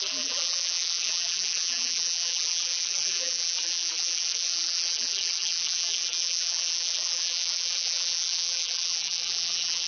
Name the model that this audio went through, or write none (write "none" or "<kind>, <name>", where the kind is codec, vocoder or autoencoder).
vocoder, BigVGAN v2